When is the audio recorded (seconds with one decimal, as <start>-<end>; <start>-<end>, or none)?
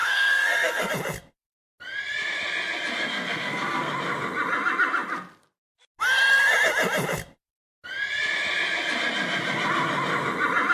0.9-3.0; 3.9-10.7